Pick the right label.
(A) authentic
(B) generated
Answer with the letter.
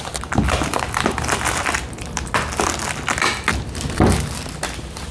B